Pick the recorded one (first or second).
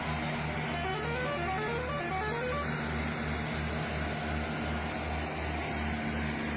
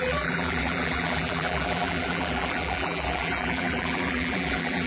first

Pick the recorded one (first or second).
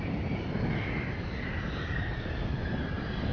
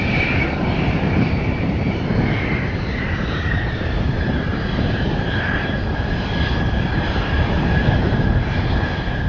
first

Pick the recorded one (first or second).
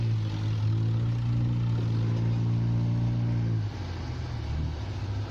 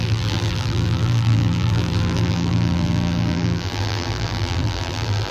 first